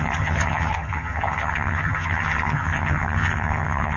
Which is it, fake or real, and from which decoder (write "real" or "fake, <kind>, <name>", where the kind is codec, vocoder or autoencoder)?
fake, vocoder, HiFi-GAN